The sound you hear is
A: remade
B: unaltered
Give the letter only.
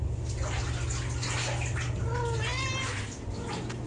B